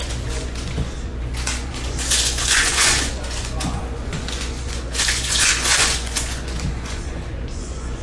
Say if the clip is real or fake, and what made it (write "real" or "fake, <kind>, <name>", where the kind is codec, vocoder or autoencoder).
fake, vocoder, Vocos